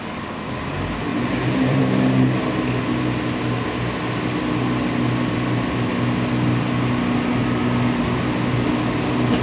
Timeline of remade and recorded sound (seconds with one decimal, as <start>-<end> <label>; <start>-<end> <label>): 0.0-1.1 recorded; 1.1-1.8 remade; 1.8-9.4 recorded